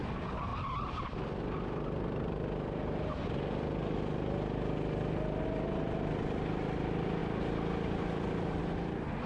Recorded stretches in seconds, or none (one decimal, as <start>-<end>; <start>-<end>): 0.0-7.2; 8.6-9.3